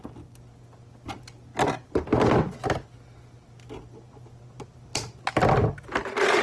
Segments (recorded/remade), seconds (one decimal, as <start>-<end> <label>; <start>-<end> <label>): 0.0-6.4 recorded